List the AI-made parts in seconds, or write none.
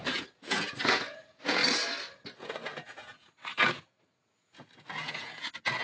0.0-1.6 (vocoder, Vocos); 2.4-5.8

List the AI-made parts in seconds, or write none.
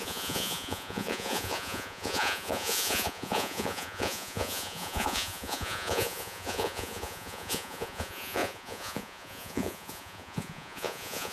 0.0-11.3 (vocoder, Vocos)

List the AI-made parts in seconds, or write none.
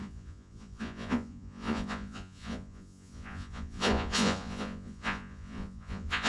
0.0-6.3 (vocoder, Vocos)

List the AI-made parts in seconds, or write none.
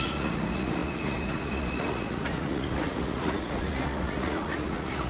0.0-5.1 (vocoder, Vocos)